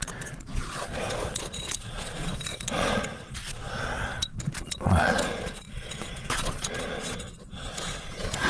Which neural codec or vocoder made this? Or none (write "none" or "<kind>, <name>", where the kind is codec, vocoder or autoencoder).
vocoder, Vocos